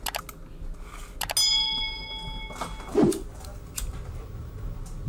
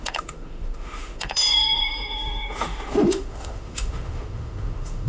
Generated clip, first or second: second